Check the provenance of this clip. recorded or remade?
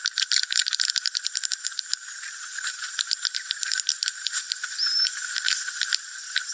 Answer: remade